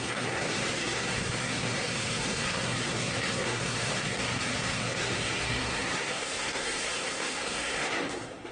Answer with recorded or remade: remade